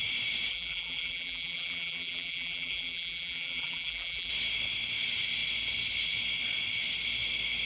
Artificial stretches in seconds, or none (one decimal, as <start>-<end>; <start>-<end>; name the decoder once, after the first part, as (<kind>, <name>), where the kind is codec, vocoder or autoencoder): 0.5-4.3 (vocoder, BigVGAN v2)